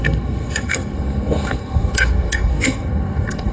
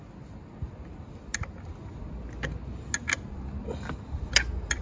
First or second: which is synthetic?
first